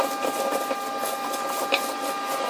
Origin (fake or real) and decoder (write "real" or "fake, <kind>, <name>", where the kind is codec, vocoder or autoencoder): real